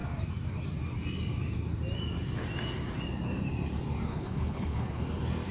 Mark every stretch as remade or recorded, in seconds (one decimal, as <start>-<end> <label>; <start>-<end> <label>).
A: 0.0-4.1 recorded; 4.1-5.0 remade; 5.0-5.5 recorded